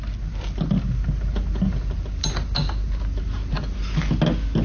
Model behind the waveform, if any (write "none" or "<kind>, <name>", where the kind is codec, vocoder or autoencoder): none